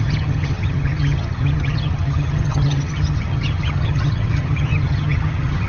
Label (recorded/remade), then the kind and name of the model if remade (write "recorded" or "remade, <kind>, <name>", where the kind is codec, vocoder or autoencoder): remade, vocoder, HiFi-GAN